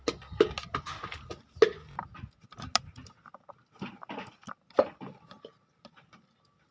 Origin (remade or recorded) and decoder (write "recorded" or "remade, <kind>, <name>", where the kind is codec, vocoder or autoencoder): recorded